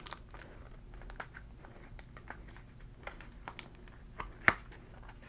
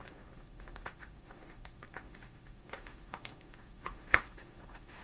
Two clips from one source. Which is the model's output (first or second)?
second